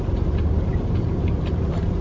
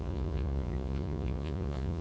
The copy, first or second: second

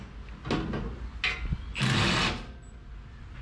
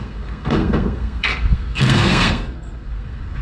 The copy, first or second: second